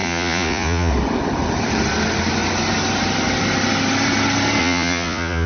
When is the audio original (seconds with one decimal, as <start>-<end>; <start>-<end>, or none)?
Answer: 0.9-4.6